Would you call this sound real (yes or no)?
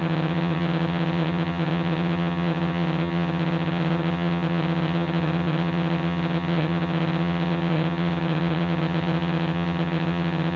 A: no